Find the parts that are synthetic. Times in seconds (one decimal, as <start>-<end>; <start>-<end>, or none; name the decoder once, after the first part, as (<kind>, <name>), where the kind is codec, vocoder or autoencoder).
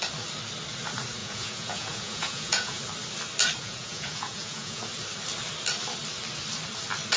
1.2-2.8 (vocoder, Vocos); 3.6-4.8